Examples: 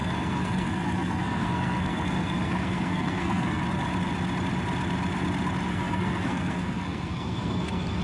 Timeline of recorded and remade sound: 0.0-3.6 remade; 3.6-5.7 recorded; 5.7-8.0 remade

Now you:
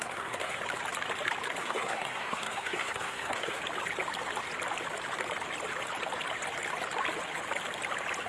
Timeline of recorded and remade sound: 0.0-0.6 remade; 0.6-1.6 recorded; 1.6-3.6 remade; 3.6-8.3 recorded